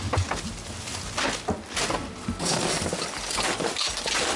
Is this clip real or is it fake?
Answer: real